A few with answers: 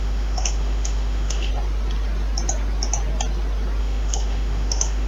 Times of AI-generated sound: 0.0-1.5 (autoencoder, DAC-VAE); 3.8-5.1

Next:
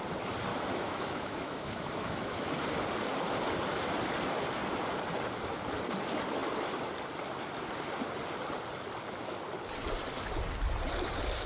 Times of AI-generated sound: 0.5-2.5 (autoencoder, DAC-VAE)